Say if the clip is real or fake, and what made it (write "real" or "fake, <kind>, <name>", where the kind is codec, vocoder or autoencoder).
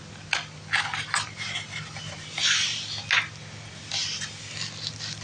real